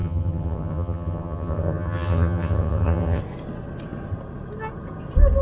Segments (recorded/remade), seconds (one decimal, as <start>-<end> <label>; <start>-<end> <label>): 0.0-3.2 remade; 3.2-5.4 recorded